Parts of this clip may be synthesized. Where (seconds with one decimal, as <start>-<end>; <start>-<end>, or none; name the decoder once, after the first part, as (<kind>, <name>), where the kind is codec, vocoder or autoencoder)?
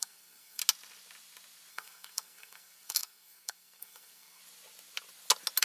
0.0-0.6 (codec, SNAC); 1.7-4.4